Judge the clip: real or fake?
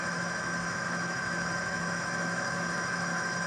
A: fake